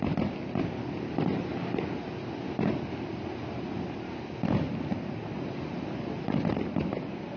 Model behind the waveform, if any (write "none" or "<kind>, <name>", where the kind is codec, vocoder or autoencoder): none